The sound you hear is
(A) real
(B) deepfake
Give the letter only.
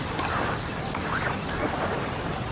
A